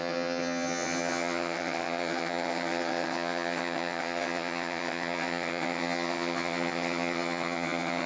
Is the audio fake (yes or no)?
yes